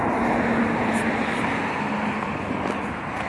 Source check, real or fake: real